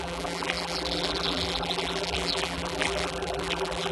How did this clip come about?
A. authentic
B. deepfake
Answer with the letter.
B